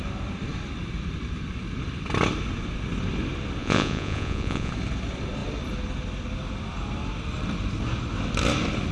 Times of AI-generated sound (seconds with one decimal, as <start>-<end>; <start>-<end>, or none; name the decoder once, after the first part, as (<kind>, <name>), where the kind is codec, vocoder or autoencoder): 3.6-4.7 (vocoder, Vocos)